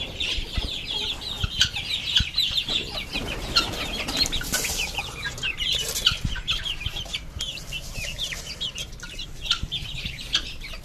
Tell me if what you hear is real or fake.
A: fake